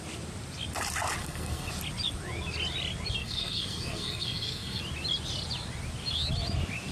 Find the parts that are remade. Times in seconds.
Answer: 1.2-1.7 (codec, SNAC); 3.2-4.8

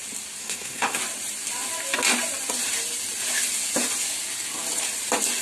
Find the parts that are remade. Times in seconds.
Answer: 0.4-1.0 (codec, SNAC)

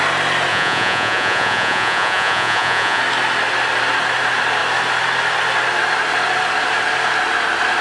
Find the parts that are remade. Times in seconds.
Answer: 0.5-3.0 (vocoder, Vocos)

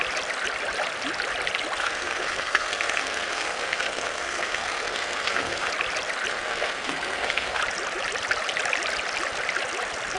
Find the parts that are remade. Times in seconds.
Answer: 1.8-5.7 (codec, SNAC); 6.3-7.6

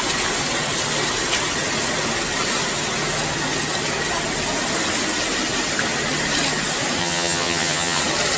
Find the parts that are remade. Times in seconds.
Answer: 7.0-8.0 (vocoder, HiFi-GAN)

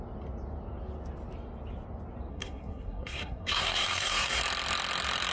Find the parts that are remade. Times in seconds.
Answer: 2.3-4.4 (codec, SNAC)